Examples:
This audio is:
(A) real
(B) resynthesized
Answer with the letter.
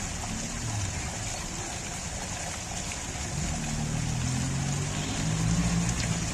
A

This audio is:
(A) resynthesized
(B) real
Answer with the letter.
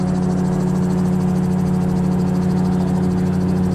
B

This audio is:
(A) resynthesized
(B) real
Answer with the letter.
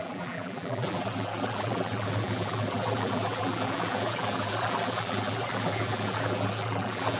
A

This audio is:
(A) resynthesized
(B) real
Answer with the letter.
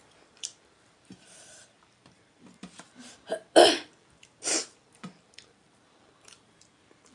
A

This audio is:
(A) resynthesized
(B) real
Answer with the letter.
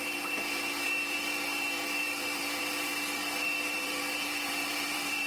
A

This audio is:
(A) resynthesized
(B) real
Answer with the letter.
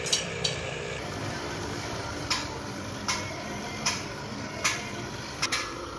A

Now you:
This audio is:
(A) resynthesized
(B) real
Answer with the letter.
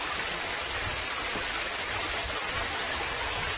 B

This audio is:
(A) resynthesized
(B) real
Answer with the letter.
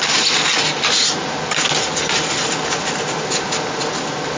B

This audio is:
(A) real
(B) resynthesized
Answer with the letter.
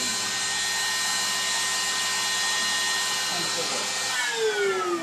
A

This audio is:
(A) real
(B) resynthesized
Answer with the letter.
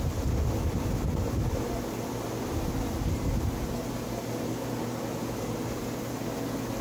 A